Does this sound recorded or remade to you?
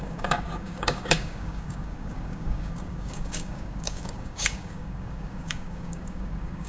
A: remade